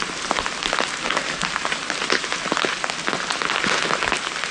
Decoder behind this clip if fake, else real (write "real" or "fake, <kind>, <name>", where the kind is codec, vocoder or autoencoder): real